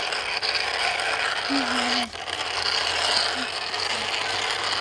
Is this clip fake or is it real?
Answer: real